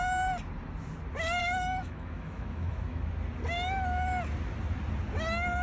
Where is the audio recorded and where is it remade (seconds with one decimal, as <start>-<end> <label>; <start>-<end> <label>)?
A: 0.0-1.4 recorded; 1.4-3.1 remade; 3.1-5.6 recorded